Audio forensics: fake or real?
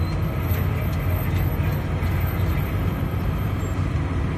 real